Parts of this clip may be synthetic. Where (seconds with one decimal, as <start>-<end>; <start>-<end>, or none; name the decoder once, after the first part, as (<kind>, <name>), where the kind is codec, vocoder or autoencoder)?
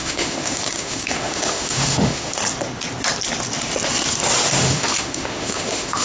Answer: 0.0-2.4 (autoencoder, DAC-VAE); 4.6-6.0